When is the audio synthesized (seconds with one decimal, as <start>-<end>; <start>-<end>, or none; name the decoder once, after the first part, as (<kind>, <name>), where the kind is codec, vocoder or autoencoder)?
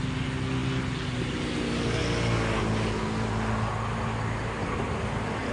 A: none